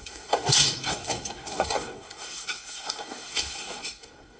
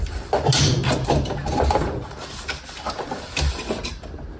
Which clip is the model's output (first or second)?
first